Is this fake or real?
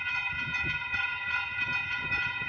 fake